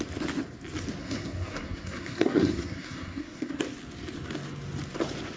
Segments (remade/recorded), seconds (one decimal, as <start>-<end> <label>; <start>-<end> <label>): 0.0-1.0 recorded; 1.0-3.6 remade; 3.6-5.4 recorded